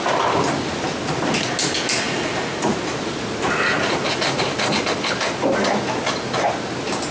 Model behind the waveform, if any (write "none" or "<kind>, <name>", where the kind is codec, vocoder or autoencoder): none